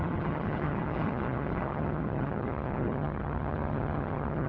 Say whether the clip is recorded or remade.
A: remade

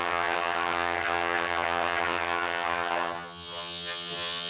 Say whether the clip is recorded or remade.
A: remade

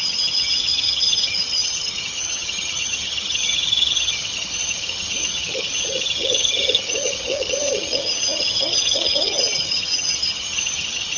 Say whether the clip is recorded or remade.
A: remade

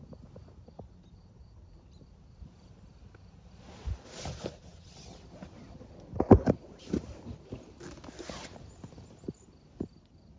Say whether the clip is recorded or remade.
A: recorded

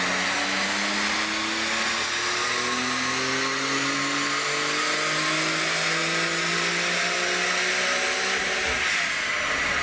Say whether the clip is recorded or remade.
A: recorded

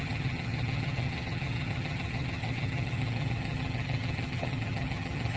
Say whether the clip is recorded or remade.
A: remade